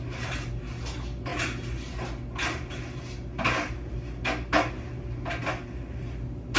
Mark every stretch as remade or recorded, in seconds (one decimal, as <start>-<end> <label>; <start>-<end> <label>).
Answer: 0.0-6.6 recorded